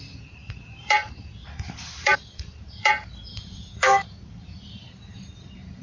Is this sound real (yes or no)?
no